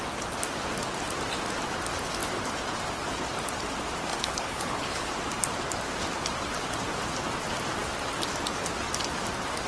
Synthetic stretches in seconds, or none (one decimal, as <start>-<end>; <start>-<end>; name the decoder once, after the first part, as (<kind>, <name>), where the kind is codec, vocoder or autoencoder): 4.1-5.1 (codec, HILCodec)